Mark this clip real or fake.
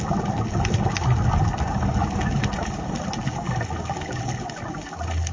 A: real